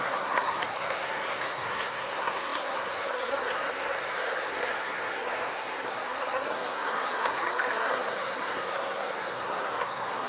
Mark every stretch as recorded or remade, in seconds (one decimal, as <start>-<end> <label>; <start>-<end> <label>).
0.0-10.3 remade